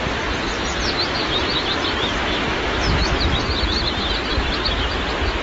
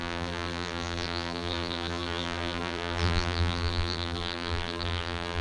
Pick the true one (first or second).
first